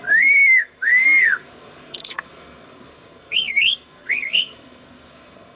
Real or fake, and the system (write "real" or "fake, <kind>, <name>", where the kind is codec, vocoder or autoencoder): fake, codec, SNAC